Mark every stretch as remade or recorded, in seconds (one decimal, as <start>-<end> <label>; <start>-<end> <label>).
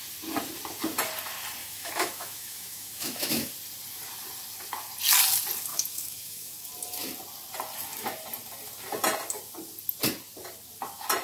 0.0-1.6 recorded; 1.6-3.5 remade; 3.5-5.7 recorded; 5.7-6.7 remade; 6.7-11.2 recorded